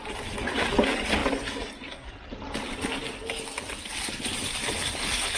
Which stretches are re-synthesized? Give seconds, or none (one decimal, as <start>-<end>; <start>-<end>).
none